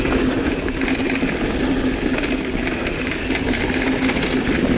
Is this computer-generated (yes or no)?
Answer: no